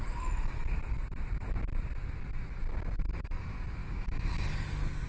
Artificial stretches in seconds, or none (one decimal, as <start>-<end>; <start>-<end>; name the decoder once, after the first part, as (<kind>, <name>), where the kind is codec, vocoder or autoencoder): 3.8-4.3 (autoencoder, DAC-VAE)